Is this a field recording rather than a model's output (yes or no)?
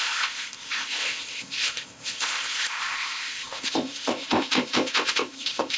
no